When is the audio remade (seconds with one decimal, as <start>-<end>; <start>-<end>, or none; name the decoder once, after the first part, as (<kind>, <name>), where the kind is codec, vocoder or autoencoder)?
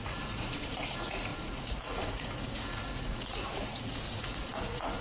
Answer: 0.0-5.0 (vocoder, Vocos)